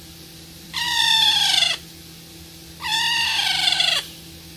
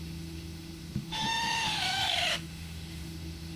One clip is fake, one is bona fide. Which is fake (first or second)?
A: second